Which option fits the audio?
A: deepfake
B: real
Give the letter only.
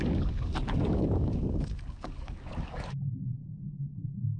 A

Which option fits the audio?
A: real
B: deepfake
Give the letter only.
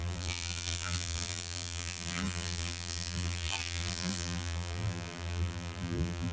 B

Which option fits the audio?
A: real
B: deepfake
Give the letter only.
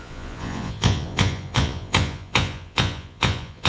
B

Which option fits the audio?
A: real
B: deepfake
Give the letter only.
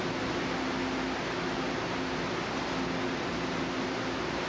A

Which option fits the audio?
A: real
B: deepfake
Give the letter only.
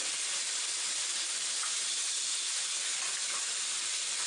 A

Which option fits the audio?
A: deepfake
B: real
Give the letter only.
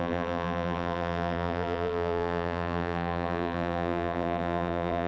A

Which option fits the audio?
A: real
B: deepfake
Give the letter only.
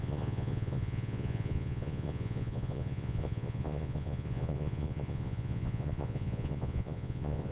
B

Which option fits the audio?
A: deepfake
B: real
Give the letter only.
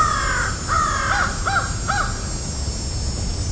B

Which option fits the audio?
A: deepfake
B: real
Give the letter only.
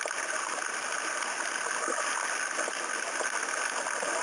B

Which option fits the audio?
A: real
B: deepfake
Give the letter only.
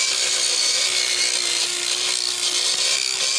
A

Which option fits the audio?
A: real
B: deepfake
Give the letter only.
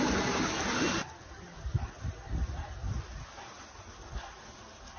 A